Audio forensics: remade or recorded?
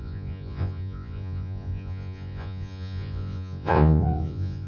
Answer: remade